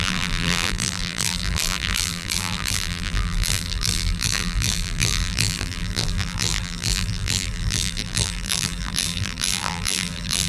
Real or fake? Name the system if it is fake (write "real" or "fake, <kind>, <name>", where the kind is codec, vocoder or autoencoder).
fake, vocoder, BigVGAN v2